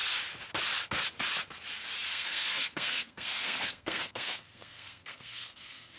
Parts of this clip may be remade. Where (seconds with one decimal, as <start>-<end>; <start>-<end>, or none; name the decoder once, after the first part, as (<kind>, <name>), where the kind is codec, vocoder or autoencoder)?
2.1-6.0 (codec, SNAC)